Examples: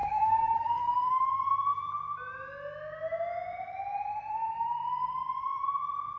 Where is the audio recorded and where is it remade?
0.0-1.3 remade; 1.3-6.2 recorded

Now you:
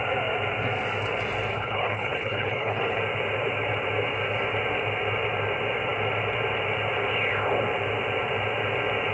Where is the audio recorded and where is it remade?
0.0-1.5 recorded; 1.5-3.0 remade; 3.0-9.1 recorded

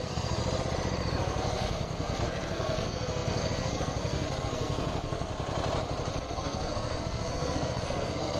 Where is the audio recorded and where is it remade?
0.0-0.4 remade; 0.4-1.2 recorded; 1.2-5.3 remade; 5.3-6.2 recorded; 6.2-8.4 remade

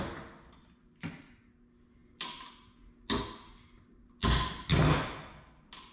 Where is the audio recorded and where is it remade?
0.0-5.9 recorded

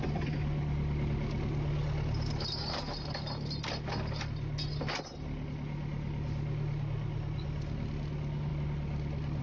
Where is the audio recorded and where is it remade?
0.0-9.4 recorded

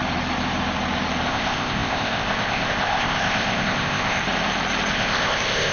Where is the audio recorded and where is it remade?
0.0-1.3 recorded; 1.3-4.2 remade; 4.2-4.9 recorded; 4.9-5.7 remade

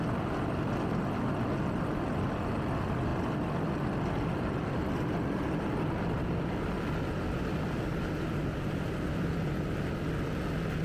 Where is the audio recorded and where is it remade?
0.0-10.8 recorded

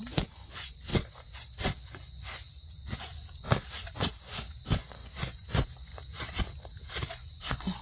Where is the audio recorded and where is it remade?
0.0-5.9 remade; 5.9-7.1 recorded; 7.1-7.8 remade